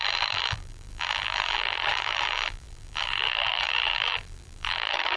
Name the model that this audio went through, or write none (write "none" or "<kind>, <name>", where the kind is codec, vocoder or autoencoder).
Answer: vocoder, BigVGAN v2